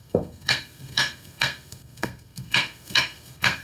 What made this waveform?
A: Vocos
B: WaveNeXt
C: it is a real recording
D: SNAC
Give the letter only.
D